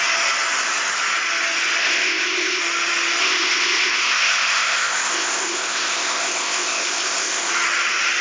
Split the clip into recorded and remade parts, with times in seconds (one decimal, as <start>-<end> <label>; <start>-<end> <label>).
0.0-1.8 recorded; 1.8-2.6 remade; 2.6-3.2 recorded; 3.2-7.5 remade; 7.5-8.2 recorded